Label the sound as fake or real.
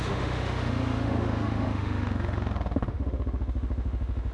fake